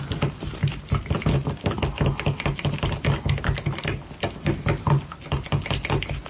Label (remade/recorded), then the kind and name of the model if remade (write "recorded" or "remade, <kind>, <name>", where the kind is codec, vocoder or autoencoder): recorded